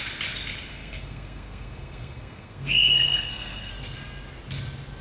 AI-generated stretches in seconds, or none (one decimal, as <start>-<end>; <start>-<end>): 0.7-3.7